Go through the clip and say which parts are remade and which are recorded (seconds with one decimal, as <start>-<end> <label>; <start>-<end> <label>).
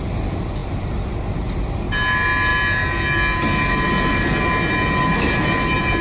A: 0.0-6.0 recorded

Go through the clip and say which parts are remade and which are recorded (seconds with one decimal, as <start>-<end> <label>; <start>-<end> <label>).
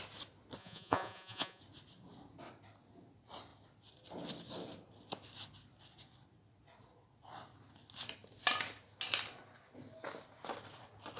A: 0.0-0.6 recorded; 0.6-1.6 remade; 1.6-11.2 recorded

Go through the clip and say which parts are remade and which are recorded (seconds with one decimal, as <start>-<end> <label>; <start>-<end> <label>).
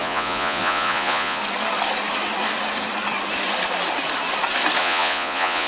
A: 0.0-1.4 remade; 1.4-4.8 recorded; 4.8-5.7 remade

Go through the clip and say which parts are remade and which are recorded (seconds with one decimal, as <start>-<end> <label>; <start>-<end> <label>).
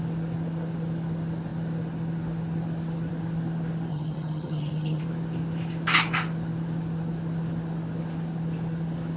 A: 0.0-3.9 recorded; 3.9-5.0 remade; 5.0-9.2 recorded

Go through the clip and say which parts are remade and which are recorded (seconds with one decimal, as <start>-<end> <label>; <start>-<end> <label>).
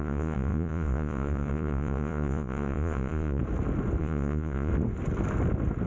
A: 0.0-3.4 remade; 3.4-4.0 recorded; 4.0-4.7 remade; 4.7-5.9 recorded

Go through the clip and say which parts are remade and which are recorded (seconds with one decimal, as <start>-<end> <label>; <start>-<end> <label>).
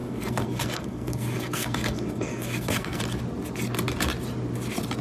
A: 0.0-3.0 remade; 3.0-5.0 recorded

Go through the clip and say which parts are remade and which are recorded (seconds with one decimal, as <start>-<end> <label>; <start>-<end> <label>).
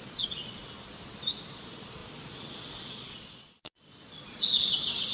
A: 0.0-0.6 remade; 0.6-1.5 recorded; 1.5-2.0 remade; 2.0-2.8 recorded; 2.8-5.1 remade